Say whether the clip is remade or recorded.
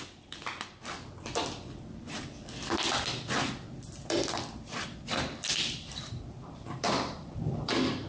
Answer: remade